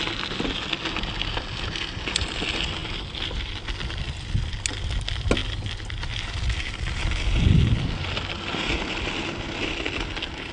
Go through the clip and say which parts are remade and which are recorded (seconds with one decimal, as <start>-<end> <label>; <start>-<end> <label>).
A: 0.0-10.5 recorded